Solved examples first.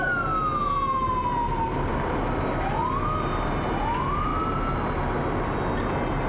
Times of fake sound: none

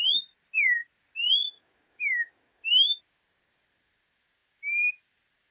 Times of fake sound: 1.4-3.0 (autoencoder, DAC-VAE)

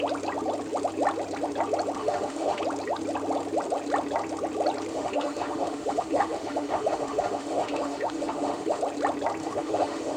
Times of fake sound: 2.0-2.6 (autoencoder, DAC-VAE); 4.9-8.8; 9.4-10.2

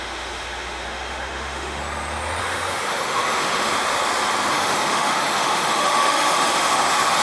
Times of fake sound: 0.0-1.8 (autoencoder, DAC-VAE); 2.4-3.7; 4.5-7.2

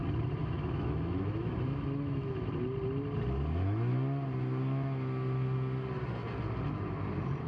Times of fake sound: 0.4-2.5 (autoencoder, DAC-VAE)

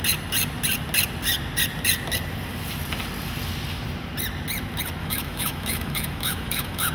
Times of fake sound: 5.0-6.9 (autoencoder, DAC-VAE)

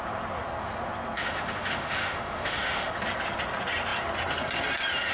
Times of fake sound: 1.2-2.9 (autoencoder, DAC-VAE)